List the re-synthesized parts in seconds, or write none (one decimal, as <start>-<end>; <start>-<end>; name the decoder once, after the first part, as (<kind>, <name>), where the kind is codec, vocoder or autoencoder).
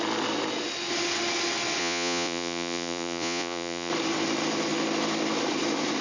1.8-3.9 (vocoder, Vocos)